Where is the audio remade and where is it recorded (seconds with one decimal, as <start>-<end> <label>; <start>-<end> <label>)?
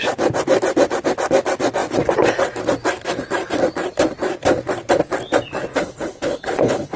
0.0-5.8 recorded; 5.8-7.0 remade